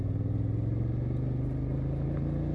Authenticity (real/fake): real